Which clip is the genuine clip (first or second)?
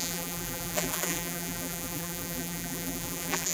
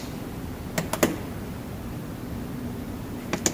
second